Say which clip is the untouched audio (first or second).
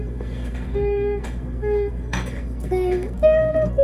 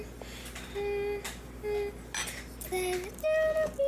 second